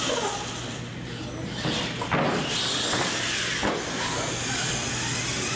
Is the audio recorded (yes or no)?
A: yes